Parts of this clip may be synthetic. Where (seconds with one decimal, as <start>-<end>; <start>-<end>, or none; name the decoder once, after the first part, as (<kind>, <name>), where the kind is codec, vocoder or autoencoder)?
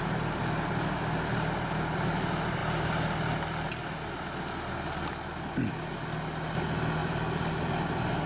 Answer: none